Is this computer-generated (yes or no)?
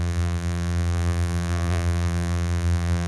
yes